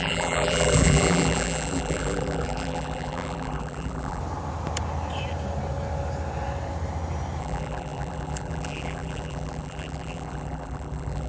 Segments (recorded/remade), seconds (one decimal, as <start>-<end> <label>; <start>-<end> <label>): 0.0-4.2 remade; 4.2-7.4 recorded; 7.4-11.3 remade